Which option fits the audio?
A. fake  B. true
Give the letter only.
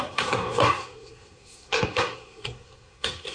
A